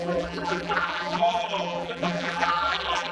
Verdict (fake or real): fake